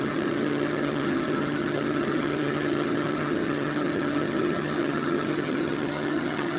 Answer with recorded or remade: remade